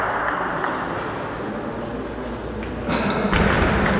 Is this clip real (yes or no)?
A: yes